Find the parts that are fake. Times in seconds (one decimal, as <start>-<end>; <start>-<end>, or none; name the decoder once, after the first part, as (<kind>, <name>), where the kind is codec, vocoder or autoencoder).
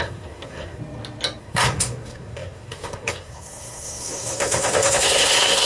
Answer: 0.0-0.8 (codec, SNAC); 1.4-5.7